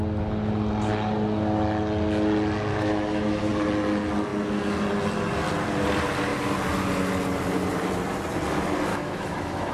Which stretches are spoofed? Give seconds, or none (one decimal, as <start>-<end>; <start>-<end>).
2.7-3.5; 8.9-9.7